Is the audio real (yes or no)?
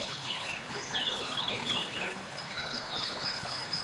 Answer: no